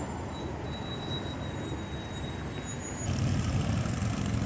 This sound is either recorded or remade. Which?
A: recorded